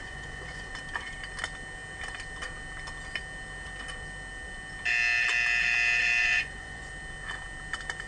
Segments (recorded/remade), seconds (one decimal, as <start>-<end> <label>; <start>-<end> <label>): 0.0-0.7 remade; 0.7-6.2 recorded; 6.2-6.9 remade; 6.9-8.1 recorded